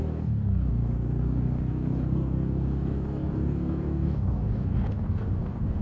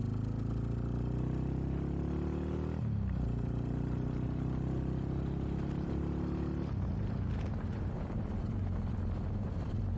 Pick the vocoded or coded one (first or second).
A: first